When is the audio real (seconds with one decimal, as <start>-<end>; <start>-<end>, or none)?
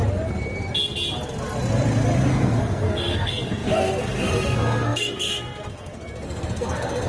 0.0-2.3